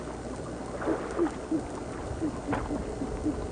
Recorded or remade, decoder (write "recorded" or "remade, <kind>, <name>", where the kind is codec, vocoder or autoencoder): recorded